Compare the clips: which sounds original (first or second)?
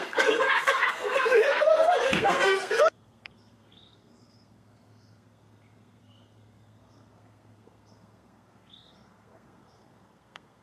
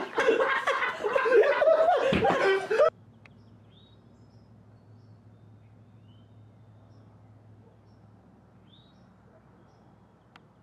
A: second